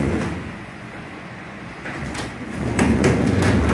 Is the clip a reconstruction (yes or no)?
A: yes